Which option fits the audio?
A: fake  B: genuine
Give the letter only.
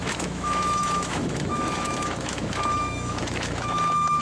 A